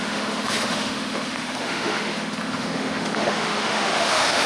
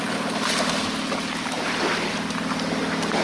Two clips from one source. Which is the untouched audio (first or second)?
second